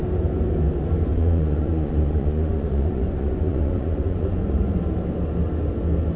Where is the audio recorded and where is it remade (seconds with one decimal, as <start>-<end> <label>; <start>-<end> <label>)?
0.0-1.1 recorded; 1.1-4.8 remade; 4.8-6.2 recorded